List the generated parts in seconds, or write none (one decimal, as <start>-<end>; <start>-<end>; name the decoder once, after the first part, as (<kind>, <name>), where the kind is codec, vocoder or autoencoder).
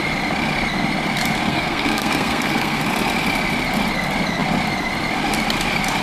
1.5-2.8 (codec, SNAC)